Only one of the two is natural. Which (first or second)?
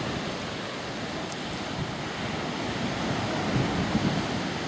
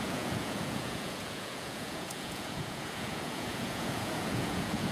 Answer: first